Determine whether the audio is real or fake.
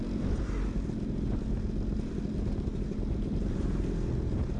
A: real